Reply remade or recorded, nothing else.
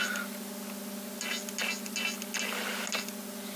recorded